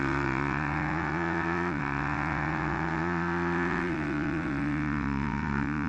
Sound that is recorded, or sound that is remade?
remade